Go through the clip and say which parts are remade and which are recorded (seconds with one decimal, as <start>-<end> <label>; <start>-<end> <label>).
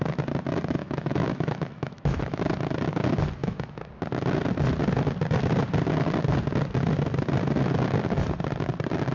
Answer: 0.0-0.8 recorded; 0.8-2.4 remade; 2.4-3.4 recorded; 3.4-3.9 remade; 3.9-9.1 recorded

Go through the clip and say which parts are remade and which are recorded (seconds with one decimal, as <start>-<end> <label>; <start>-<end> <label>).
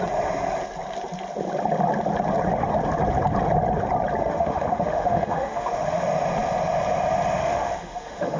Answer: 0.0-4.2 recorded; 4.2-6.0 remade; 6.0-7.4 recorded; 7.4-8.4 remade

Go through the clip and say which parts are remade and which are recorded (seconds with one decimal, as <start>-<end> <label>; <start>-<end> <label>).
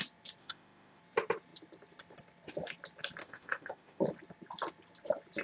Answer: 0.0-0.4 recorded; 0.4-1.0 remade; 1.0-3.2 recorded; 3.2-4.0 remade; 4.0-5.4 recorded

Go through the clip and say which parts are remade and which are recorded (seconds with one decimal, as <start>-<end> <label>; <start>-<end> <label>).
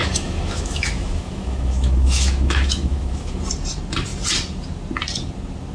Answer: 0.0-3.4 remade; 3.4-5.7 recorded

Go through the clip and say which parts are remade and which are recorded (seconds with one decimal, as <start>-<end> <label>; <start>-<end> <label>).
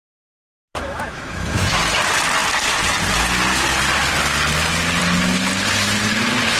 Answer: 0.0-0.7 recorded; 0.7-1.8 remade; 1.8-6.6 recorded